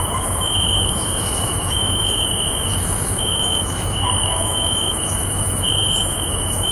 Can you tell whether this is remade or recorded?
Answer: remade